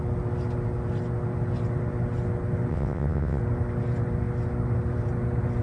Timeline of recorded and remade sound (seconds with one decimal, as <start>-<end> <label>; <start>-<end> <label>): 0.0-2.7 recorded; 2.7-3.4 remade; 3.4-5.6 recorded